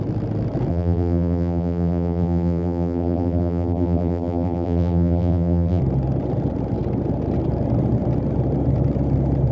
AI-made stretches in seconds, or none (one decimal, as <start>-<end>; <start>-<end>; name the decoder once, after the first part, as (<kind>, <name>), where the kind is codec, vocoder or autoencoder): 0.7-5.8 (vocoder, BigVGAN v2)